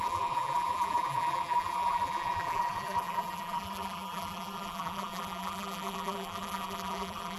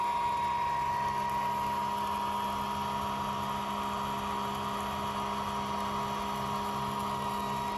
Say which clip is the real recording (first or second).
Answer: second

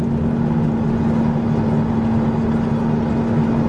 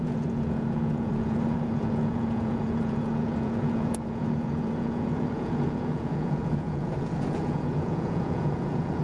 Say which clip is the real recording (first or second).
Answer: first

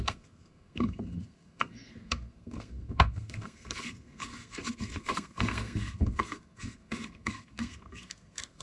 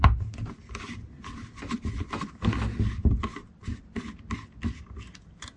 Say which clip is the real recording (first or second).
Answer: second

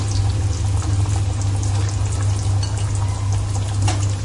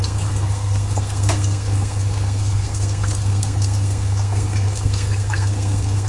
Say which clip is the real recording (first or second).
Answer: first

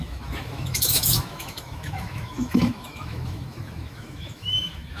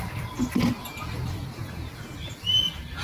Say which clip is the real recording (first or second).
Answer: second